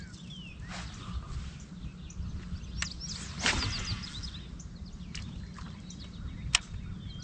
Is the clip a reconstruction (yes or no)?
no